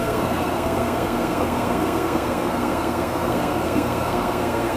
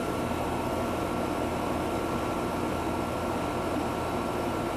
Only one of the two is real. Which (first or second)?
second